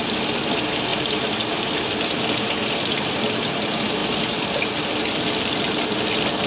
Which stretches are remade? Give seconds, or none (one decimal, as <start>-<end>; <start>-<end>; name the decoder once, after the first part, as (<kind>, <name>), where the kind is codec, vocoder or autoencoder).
none